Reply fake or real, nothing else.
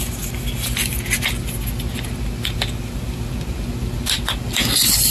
real